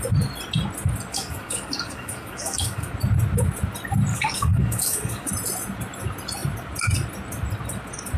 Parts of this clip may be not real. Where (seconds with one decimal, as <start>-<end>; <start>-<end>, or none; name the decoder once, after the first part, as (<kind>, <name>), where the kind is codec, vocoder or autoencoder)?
1.1-2.9 (codec, DAC); 4.1-5.3